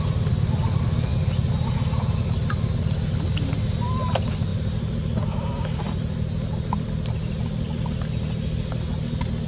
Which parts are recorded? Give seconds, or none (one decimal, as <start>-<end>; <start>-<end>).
0.0-9.5